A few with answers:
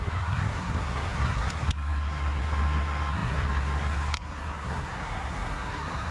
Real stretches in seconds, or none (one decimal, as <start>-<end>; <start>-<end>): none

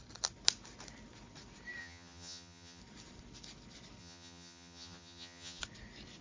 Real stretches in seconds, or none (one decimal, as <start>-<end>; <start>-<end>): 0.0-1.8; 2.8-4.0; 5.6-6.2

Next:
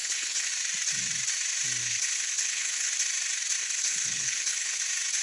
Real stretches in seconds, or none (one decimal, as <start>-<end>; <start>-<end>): 0.5-1.8; 2.9-3.6; 4.8-5.2

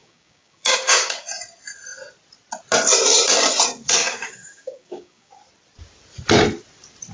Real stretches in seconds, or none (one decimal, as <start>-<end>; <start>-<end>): 1.3-4.0; 5.3-7.1

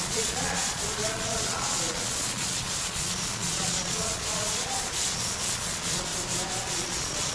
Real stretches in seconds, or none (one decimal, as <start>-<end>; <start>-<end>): 6.1-6.6

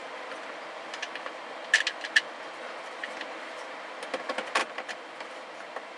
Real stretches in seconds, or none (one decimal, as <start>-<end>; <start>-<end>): 0.0-6.0

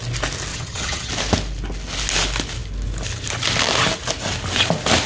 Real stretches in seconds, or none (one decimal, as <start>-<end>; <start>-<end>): 0.0-0.5; 1.1-5.1